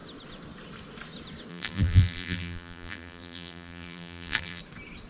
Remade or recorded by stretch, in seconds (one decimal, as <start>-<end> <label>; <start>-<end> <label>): 0.0-1.5 recorded; 1.5-4.6 remade; 4.6-5.1 recorded